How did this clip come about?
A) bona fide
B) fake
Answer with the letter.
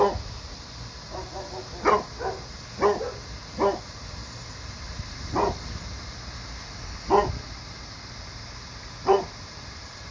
A